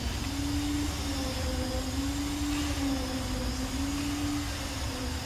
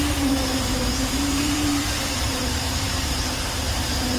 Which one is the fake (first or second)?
second